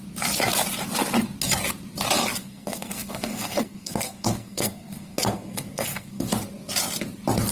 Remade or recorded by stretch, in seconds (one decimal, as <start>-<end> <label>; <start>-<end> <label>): 0.0-2.4 recorded; 2.4-6.3 remade; 6.3-7.5 recorded